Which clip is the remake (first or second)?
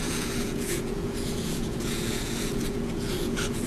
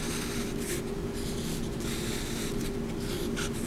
first